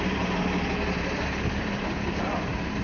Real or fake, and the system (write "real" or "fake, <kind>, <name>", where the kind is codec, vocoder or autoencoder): fake, vocoder, BigVGAN v2